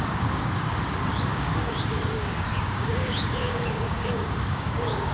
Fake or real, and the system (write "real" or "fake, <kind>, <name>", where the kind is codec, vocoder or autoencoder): fake, codec, DAC